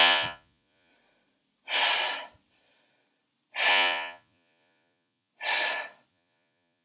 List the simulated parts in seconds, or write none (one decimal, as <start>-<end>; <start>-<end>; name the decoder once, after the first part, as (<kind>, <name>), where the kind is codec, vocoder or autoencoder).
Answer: 0.0-0.9 (vocoder, Vocos); 3.7-5.3; 6.1-6.8